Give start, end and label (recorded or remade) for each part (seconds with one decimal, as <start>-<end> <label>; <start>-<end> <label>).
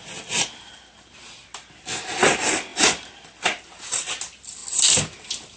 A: 0.0-5.6 recorded